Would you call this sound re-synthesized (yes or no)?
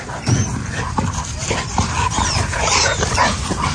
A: no